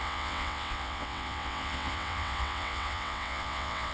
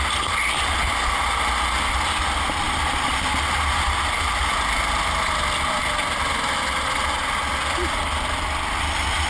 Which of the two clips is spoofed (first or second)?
first